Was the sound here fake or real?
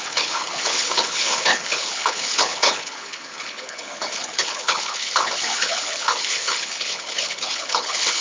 fake